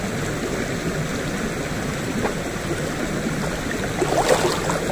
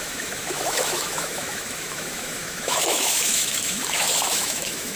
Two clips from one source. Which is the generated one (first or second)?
second